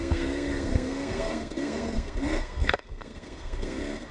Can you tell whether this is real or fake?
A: fake